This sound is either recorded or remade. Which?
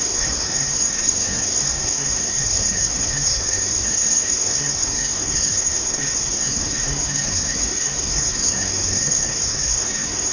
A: remade